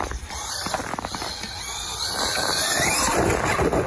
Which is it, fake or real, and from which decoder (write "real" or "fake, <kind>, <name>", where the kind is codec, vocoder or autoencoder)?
real